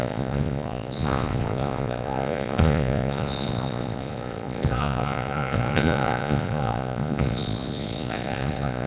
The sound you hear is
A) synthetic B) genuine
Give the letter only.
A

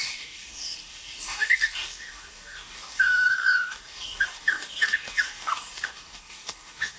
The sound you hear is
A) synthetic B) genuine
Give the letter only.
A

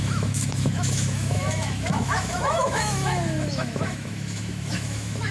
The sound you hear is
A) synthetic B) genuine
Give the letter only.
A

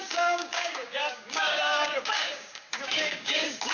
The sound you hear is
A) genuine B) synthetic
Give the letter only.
B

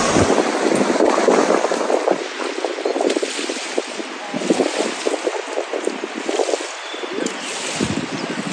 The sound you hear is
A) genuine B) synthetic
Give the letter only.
A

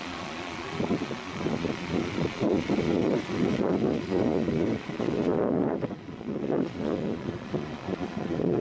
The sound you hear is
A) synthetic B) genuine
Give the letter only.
A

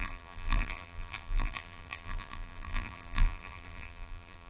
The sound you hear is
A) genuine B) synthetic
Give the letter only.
B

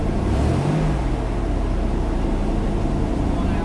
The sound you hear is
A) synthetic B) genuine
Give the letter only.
B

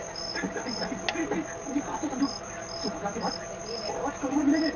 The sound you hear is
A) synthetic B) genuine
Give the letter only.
B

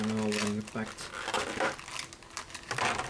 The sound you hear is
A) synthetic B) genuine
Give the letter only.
B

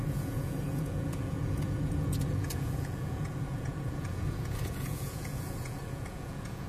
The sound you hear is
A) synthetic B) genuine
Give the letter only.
A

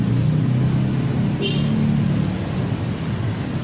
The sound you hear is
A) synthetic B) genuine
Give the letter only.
B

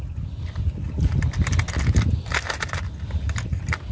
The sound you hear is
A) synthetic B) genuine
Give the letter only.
B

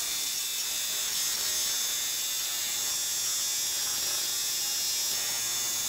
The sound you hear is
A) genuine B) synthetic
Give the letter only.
A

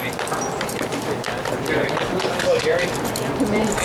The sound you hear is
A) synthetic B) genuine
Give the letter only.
A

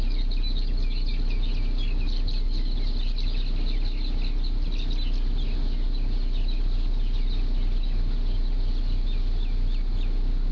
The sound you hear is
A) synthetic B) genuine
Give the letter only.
B